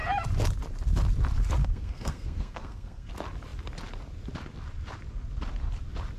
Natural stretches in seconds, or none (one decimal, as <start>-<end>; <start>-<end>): 0.0-1.6; 3.1-6.2